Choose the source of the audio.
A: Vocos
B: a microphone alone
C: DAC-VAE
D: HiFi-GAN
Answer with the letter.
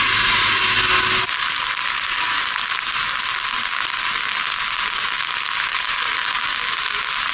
B